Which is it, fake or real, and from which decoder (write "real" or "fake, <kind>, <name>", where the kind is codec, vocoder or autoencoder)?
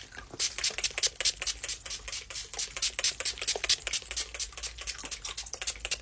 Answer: real